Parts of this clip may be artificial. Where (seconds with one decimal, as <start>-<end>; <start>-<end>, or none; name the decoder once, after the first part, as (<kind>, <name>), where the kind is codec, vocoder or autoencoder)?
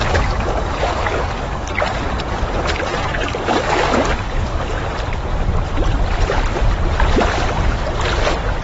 0.0-1.7 (codec, DAC); 2.9-4.8